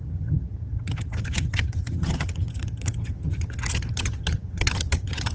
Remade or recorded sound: remade